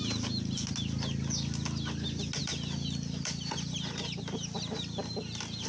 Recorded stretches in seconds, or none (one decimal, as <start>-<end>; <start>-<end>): 0.0-2.4; 3.7-5.7